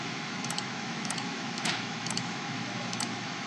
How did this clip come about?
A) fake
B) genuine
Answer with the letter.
A